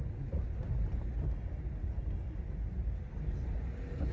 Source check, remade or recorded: recorded